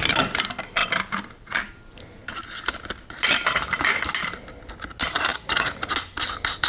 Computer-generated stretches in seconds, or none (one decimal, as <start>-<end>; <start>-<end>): 5.3-5.8